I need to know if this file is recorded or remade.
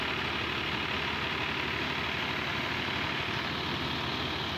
recorded